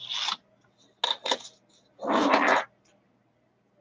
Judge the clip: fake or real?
real